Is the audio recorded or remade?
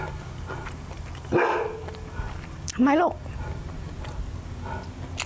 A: recorded